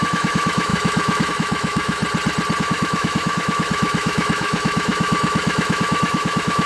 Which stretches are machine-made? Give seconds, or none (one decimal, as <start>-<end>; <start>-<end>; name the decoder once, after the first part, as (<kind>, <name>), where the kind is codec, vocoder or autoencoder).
0.0-2.0 (autoencoder, DAC-VAE); 2.6-6.7